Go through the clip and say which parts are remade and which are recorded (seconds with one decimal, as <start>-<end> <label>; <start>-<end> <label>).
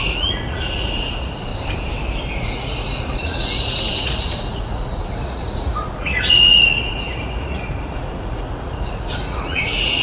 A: 0.0-1.5 remade; 1.5-2.3 recorded; 2.3-10.0 remade